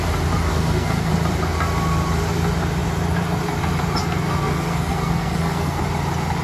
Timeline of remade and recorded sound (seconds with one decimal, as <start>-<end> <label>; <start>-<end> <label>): 0.0-0.5 recorded; 0.5-1.1 remade; 1.1-4.0 recorded; 4.0-5.8 remade; 5.8-6.4 recorded